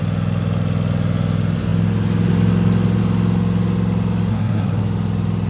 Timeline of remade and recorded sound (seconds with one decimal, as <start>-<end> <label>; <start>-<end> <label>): 0.0-4.3 recorded; 4.3-4.8 remade; 4.8-5.5 recorded